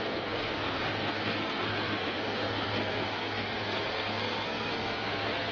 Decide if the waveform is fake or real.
fake